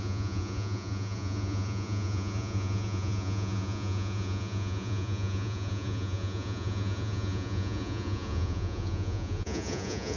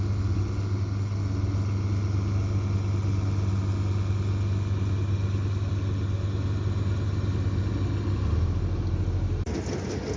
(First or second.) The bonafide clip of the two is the second